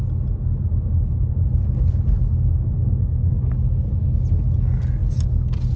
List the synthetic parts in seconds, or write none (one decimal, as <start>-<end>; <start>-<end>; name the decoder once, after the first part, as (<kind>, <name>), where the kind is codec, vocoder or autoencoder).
2.8-3.4 (codec, SNAC)